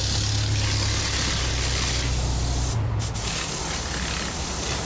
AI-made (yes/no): no